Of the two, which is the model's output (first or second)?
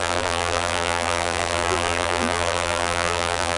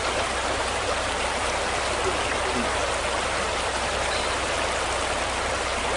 first